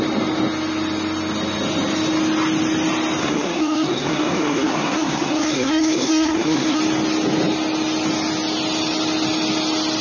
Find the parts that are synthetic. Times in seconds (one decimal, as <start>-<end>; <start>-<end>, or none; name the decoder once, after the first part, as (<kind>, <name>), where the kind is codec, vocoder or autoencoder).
3.2-6.8 (codec, SNAC)